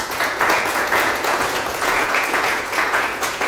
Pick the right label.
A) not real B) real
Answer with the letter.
A